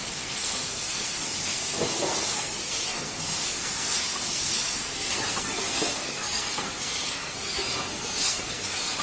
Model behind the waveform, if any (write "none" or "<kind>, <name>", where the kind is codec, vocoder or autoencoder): codec, SNAC